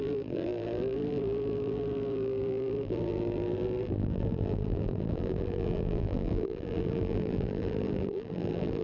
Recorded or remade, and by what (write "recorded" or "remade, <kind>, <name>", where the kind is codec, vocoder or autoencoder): remade, vocoder, BigVGAN v2